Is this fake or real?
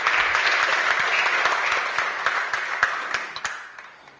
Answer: real